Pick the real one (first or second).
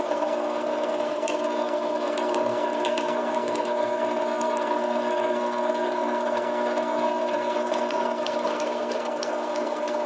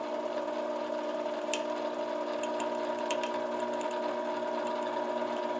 second